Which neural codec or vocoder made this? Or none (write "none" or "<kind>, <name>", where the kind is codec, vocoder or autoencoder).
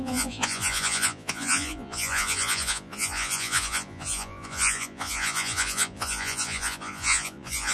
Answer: vocoder, Vocos